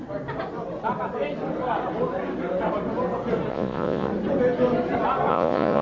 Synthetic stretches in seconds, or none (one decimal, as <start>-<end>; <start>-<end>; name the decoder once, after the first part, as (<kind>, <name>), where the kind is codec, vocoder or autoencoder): 3.5-4.1 (vocoder, Vocos); 5.3-5.8